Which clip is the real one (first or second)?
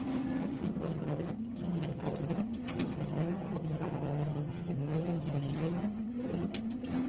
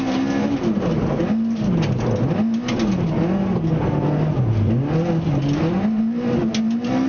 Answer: second